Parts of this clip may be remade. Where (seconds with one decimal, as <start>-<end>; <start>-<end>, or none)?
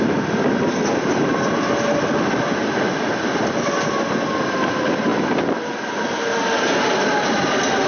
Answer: none